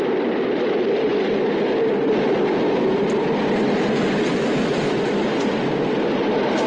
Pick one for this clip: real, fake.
real